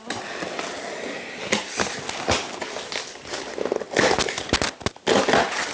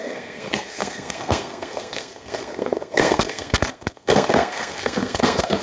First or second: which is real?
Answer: first